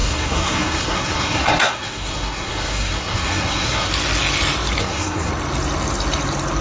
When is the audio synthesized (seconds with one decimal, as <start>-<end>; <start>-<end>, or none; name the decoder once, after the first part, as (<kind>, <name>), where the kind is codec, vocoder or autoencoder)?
0.0-3.9 (codec, SNAC); 4.8-5.3